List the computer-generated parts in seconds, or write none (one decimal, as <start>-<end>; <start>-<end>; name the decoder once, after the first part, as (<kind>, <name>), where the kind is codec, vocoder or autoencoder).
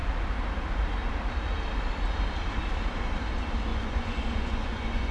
3.7-5.1 (vocoder, Vocos)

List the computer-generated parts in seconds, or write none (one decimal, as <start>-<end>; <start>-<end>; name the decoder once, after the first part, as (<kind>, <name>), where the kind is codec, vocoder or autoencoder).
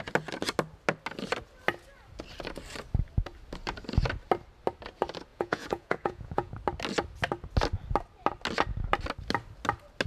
5.3-6.5 (vocoder, Vocos)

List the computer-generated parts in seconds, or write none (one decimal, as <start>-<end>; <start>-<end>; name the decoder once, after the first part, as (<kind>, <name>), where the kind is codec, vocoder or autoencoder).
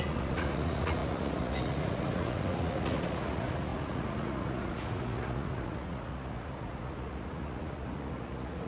0.0-8.7 (vocoder, Vocos)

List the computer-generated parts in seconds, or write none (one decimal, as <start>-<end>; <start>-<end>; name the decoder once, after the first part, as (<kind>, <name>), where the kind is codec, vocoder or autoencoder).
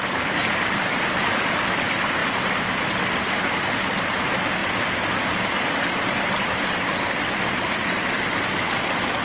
none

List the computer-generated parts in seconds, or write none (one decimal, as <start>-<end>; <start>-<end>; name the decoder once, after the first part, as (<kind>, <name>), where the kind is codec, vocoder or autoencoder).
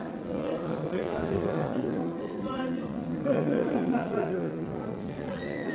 0.0-5.7 (vocoder, Vocos)